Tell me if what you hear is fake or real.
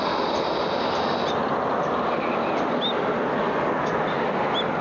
real